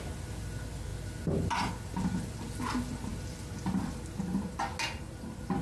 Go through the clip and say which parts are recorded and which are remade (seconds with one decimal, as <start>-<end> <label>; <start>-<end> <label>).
0.0-3.1 recorded; 3.1-4.2 remade; 4.2-5.6 recorded